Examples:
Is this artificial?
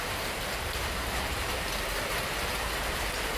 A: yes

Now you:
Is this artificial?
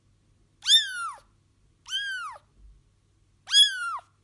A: no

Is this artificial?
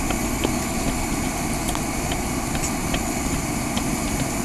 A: no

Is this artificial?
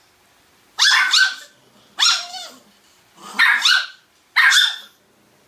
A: no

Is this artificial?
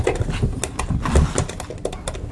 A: no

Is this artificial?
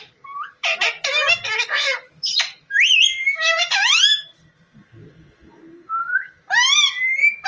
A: yes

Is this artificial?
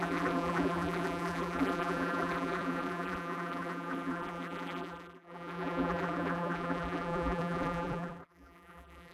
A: yes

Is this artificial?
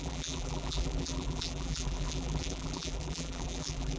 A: yes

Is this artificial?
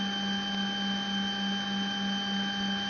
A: no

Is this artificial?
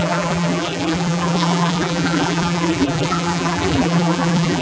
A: yes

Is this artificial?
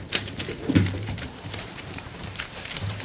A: yes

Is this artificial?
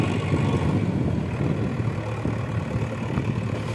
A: yes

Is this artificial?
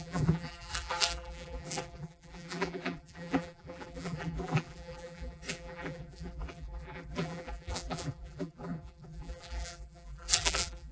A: yes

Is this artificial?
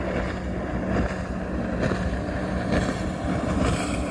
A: no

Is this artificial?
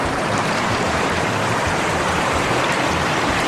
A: yes